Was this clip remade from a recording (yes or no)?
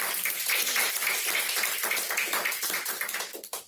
no